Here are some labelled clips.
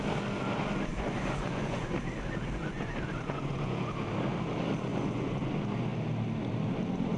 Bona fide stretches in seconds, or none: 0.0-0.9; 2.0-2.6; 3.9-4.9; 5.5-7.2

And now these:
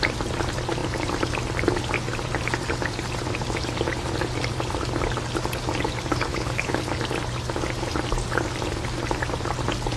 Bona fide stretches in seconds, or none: 0.0-6.3; 6.9-10.0

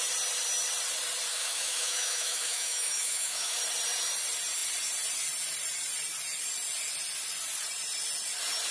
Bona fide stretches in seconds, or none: 0.0-1.3; 3.6-8.7

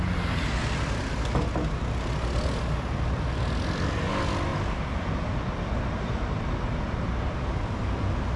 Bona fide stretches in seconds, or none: 0.0-8.4

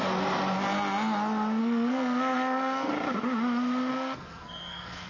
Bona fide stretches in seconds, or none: 0.0-1.6; 2.9-3.9

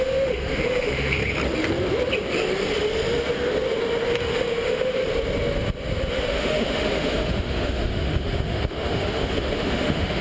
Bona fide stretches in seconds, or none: 1.2-4.2; 5.0-6.1